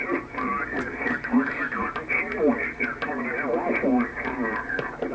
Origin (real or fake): real